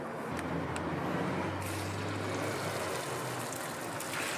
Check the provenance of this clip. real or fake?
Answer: real